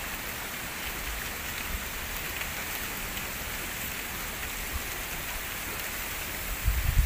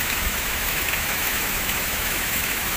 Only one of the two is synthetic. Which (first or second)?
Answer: second